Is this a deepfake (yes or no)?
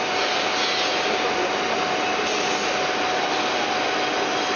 no